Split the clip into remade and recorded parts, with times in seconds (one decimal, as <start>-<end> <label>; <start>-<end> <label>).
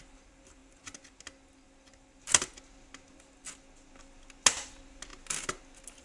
0.0-6.0 recorded